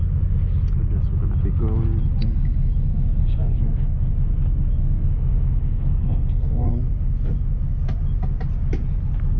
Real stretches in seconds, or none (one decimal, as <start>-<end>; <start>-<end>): 0.0-3.2; 4.1-4.8; 6.7-9.4